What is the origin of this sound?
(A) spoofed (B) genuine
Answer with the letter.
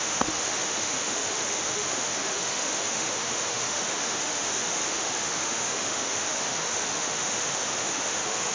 A